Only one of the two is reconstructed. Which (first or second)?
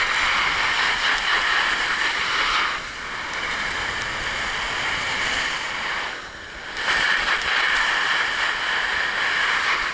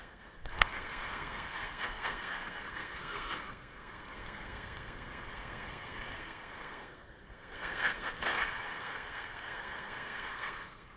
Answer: second